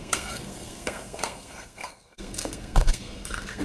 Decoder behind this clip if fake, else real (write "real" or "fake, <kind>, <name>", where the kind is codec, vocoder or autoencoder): fake, codec, SNAC